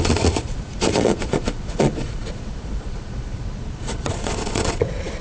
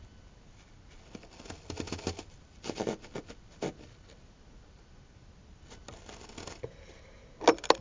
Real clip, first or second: second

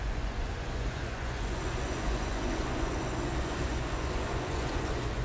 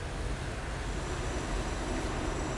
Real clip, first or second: second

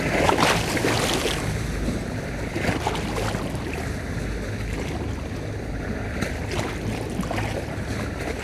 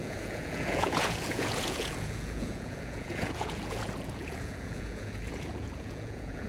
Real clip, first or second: first